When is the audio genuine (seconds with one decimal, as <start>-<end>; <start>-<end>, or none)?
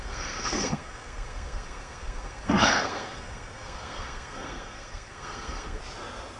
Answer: 5.8-6.4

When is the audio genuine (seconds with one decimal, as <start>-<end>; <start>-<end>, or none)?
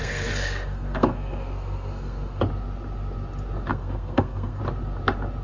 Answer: 2.4-3.7; 4.6-5.4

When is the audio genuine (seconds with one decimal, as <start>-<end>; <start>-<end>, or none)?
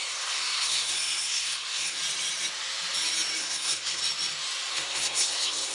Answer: 2.0-3.4; 4.0-4.7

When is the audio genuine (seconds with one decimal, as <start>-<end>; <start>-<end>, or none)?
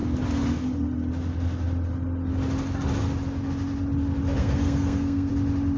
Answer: 0.0-4.4; 5.3-5.8